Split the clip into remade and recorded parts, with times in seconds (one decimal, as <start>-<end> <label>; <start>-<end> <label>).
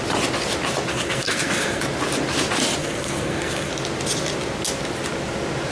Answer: 0.0-0.9 recorded; 0.9-1.8 remade; 1.8-2.8 recorded; 2.8-3.7 remade; 3.7-5.7 recorded